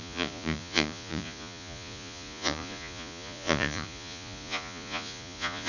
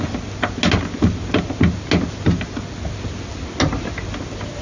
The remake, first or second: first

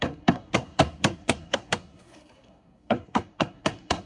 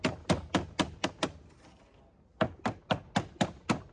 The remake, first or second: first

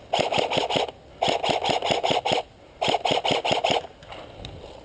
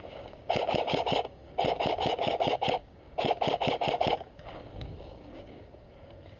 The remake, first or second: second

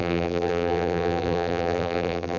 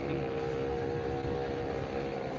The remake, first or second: first